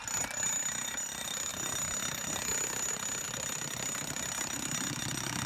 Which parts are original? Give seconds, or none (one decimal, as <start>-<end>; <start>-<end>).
0.0-5.5